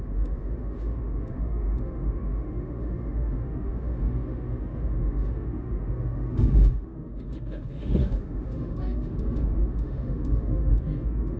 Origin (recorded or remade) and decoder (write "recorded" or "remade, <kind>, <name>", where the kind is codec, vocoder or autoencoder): remade, autoencoder, DAC-VAE